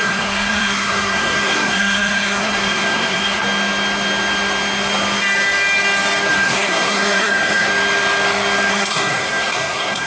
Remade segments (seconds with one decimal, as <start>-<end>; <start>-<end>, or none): 0.0-3.4; 6.3-7.7; 8.7-10.1